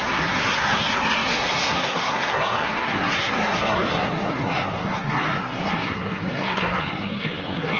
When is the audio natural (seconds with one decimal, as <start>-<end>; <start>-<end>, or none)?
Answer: none